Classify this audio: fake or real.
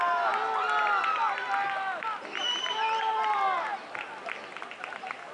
real